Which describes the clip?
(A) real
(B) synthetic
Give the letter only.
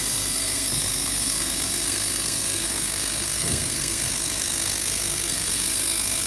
B